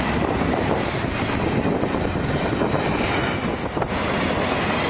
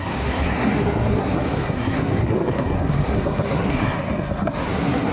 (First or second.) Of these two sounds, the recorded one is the first